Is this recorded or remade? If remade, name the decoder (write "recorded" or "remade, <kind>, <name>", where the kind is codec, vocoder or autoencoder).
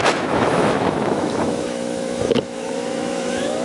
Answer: remade, autoencoder, DAC-VAE